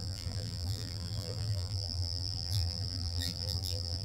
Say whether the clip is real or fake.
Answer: fake